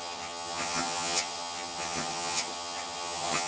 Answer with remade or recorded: remade